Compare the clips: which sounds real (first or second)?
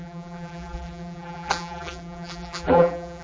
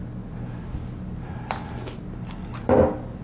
second